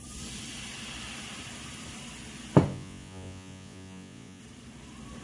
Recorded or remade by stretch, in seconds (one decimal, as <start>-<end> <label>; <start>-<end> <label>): 0.0-2.7 recorded; 2.7-4.4 remade; 4.4-5.2 recorded